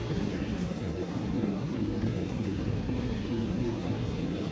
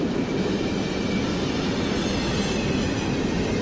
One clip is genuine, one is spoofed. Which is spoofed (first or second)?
first